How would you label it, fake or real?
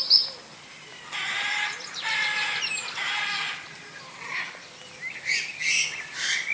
real